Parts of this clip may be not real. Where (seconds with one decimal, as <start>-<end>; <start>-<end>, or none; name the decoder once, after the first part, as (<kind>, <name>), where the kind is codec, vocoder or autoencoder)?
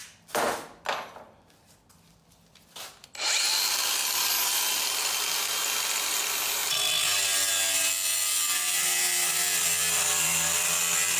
2.1-4.0 (vocoder, BigVGAN v2); 4.8-6.6; 7.5-11.2